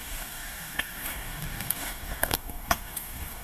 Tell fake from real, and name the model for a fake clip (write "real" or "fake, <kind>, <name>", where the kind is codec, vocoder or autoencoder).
fake, codec, DAC